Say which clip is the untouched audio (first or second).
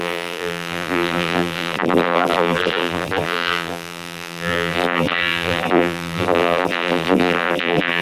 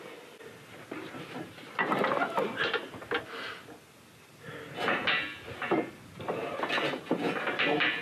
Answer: second